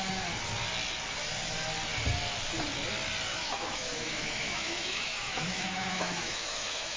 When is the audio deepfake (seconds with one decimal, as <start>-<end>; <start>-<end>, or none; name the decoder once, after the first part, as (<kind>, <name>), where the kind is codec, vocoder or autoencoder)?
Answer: 3.3-7.0 (autoencoder, DAC-VAE)